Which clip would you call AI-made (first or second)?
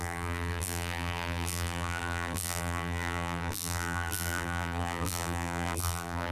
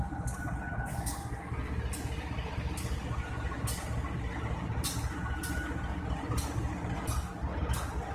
first